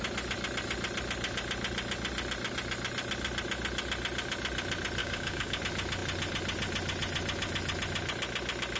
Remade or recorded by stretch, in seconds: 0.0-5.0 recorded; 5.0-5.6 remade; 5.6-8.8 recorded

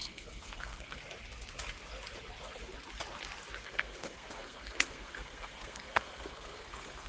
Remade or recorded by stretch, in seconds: 0.0-1.0 remade; 1.0-3.6 recorded; 3.6-7.1 remade

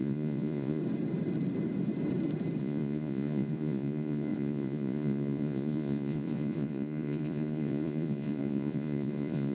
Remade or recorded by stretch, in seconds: 0.0-0.8 remade; 0.8-2.6 recorded; 2.6-9.5 remade

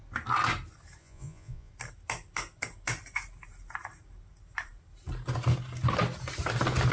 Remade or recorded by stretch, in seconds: 0.0-1.0 recorded; 1.0-1.7 remade; 1.7-6.9 recorded

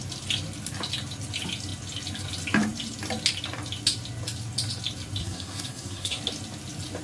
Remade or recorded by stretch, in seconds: 0.0-5.2 recorded; 5.2-6.2 remade; 6.2-7.0 recorded

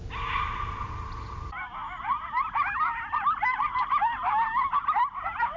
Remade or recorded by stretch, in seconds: 0.0-5.6 recorded